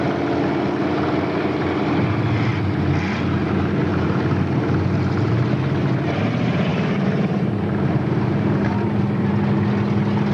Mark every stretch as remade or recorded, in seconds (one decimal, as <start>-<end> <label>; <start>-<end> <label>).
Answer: 0.0-3.9 recorded; 3.9-5.3 remade; 5.3-6.7 recorded; 6.7-9.3 remade; 9.3-10.3 recorded